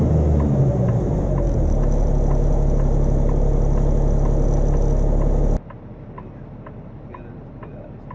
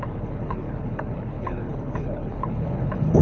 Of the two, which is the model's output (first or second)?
second